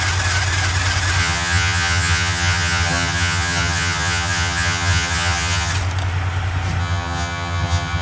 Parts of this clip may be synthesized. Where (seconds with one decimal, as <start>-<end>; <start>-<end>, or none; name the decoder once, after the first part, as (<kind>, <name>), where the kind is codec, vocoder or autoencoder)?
1.2-5.7 (vocoder, HiFi-GAN); 6.8-8.0